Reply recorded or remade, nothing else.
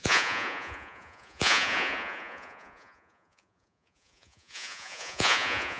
remade